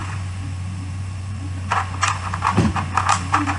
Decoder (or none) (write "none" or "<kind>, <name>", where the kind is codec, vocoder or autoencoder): vocoder, Vocos